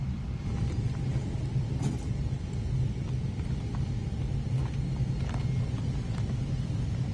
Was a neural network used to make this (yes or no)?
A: no